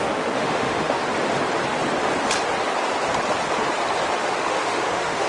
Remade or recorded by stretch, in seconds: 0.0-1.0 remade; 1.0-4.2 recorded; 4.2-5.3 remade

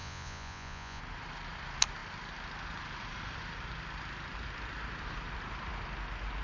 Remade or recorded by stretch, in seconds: 0.0-1.0 remade; 1.0-6.4 recorded